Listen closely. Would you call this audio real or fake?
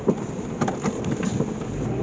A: real